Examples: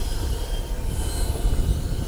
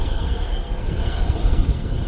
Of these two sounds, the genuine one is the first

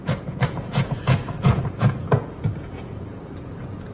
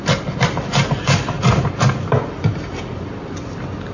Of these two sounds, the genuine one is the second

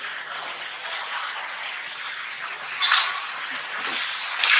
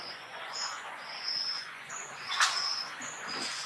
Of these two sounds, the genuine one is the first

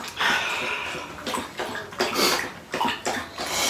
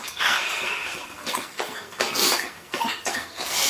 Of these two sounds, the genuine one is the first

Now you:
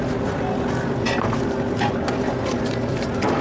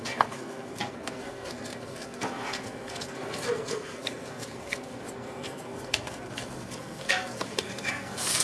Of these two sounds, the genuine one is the first